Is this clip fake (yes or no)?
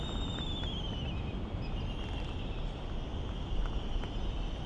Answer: no